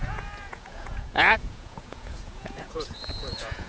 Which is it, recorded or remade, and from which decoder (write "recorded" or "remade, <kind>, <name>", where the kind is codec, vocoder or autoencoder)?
remade, vocoder, Vocos